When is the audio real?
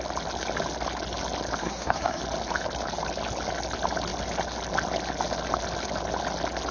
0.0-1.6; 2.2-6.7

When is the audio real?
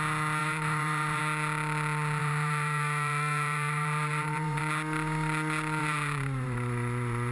0.0-0.4; 1.2-2.2; 4.6-5.8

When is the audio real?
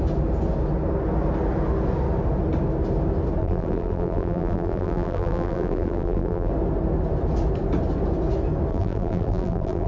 0.0-3.4; 6.5-8.7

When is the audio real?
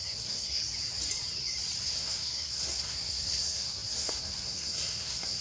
0.6-1.8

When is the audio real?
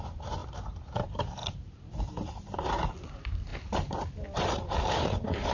0.4-0.9; 1.4-3.1